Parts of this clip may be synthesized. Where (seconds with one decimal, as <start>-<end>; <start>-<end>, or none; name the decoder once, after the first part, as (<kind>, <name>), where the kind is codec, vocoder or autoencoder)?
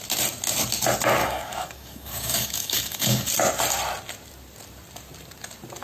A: 1.2-3.3 (codec, DAC)